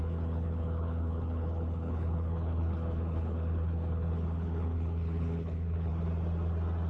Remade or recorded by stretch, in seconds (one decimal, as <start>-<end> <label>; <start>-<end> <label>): 0.0-5.9 remade; 5.9-6.9 recorded